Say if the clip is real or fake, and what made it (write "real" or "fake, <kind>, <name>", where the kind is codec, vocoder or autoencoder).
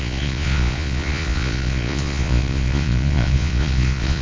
fake, vocoder, Vocos